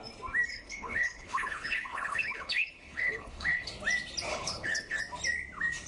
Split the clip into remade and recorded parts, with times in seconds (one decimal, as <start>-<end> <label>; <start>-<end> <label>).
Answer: 0.0-0.5 recorded; 0.5-3.7 remade; 3.7-4.3 recorded; 4.3-5.0 remade; 5.0-5.9 recorded